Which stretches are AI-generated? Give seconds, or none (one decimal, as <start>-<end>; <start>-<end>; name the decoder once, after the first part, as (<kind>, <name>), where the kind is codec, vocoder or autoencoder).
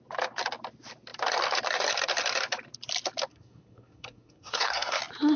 3.3-5.0 (codec, SNAC)